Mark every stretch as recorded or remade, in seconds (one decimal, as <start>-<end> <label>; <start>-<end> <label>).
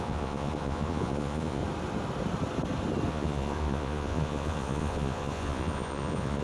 0.0-1.6 remade; 1.6-3.1 recorded; 3.1-6.4 remade